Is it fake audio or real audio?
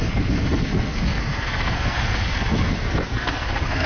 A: fake